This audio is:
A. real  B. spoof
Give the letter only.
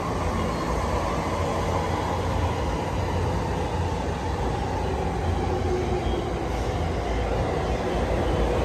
A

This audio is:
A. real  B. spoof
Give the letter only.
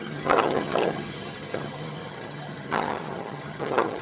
B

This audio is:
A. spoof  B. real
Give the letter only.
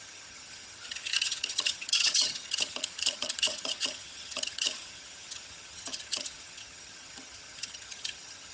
A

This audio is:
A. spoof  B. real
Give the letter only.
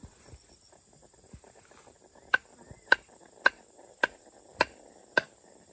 B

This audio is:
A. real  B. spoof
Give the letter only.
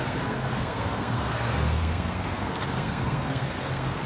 B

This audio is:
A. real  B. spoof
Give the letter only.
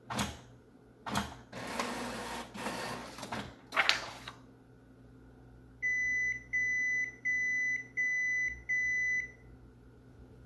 A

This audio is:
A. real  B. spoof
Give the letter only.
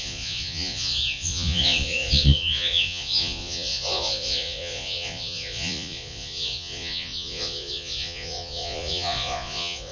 B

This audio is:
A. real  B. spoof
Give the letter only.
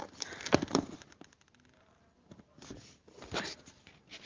A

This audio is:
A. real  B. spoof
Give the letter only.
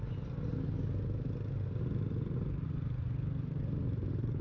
A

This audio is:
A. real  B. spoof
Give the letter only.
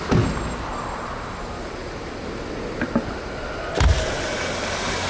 A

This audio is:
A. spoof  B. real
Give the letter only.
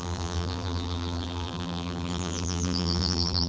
A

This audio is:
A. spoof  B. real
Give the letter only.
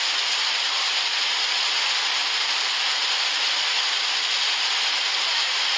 B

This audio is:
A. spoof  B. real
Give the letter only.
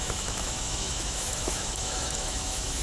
A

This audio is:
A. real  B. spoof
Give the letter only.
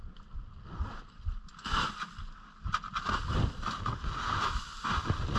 A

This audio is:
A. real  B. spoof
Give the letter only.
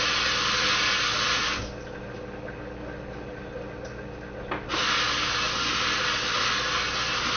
A